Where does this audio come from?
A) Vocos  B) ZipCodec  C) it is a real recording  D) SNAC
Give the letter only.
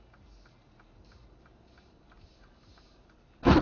C